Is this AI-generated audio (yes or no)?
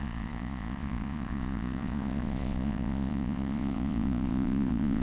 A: yes